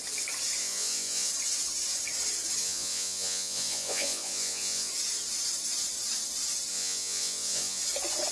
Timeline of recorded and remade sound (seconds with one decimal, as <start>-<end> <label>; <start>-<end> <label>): 0.0-0.6 recorded; 0.6-1.3 remade; 1.3-2.6 recorded; 2.6-4.9 remade; 4.9-6.7 recorded; 6.7-7.8 remade; 7.8-8.3 recorded